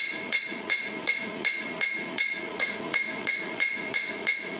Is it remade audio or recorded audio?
remade